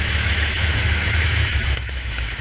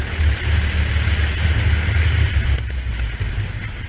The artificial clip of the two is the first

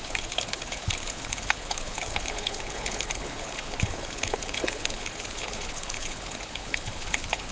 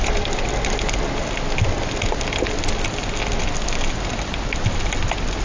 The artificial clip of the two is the first